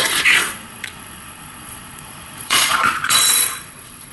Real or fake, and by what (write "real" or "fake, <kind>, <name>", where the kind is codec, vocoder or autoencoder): fake, vocoder, Vocos